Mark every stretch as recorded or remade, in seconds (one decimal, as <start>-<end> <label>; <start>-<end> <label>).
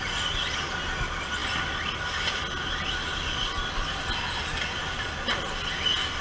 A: 0.0-6.2 recorded